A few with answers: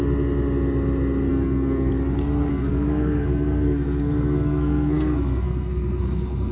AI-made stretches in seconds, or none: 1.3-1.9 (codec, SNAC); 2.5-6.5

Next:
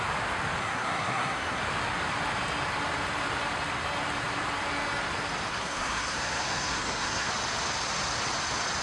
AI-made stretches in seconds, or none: 0.6-1.6 (codec, SNAC); 5.5-7.3

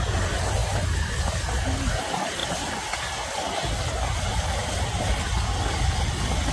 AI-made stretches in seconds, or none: none

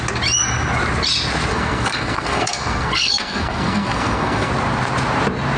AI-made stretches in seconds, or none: 1.5-4.5 (codec, SNAC)

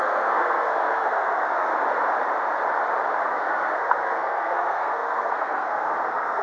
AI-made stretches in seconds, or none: 0.0-1.7 (codec, SNAC); 3.3-6.4

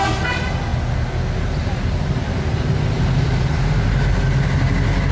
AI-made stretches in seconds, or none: none

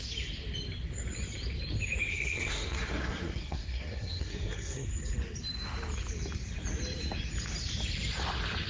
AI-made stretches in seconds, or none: 2.1-4.9 (codec, SNAC)